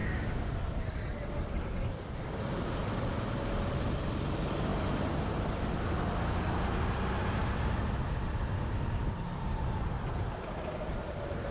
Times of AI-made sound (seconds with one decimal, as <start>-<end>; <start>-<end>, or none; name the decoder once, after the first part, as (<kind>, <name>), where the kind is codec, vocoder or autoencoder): 0.0-0.5 (codec, DAC)